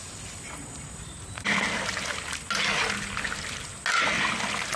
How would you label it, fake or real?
real